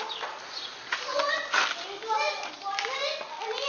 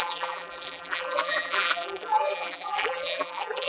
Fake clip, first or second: second